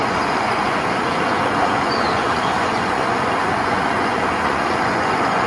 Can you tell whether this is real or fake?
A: fake